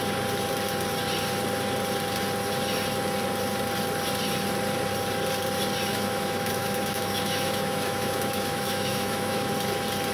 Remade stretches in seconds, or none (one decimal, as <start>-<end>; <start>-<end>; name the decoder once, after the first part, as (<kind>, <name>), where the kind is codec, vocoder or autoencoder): 5.9-9.5 (autoencoder, DAC-VAE)

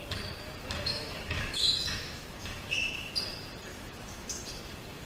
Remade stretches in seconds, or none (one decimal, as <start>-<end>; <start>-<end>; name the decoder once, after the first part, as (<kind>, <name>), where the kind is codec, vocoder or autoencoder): 0.9-3.1 (autoencoder, DAC-VAE); 3.7-4.4

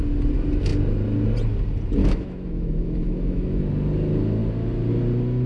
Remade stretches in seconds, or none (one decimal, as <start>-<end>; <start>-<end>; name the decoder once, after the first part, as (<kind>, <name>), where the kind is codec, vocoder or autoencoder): 2.0-3.6 (autoencoder, DAC-VAE)

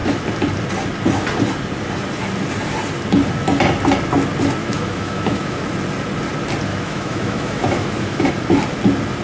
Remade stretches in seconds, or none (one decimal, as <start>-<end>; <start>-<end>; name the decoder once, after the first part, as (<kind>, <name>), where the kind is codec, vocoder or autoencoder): 4.6-5.6 (autoencoder, DAC-VAE); 6.7-8.3

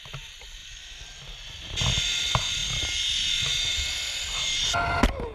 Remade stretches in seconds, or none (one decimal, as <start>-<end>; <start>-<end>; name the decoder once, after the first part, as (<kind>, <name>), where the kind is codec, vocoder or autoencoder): none

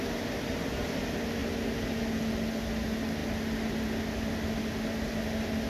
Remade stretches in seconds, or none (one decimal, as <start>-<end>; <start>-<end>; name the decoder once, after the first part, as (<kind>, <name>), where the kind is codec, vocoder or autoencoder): none

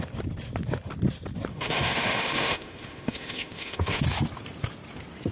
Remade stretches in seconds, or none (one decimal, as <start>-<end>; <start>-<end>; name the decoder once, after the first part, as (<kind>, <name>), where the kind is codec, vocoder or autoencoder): 1.5-4.0 (autoencoder, DAC-VAE)